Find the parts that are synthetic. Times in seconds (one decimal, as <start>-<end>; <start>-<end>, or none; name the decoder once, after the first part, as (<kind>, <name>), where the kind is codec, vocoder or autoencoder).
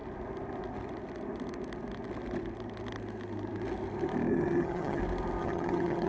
4.3-5.0 (vocoder, HiFi-GAN); 5.4-6.1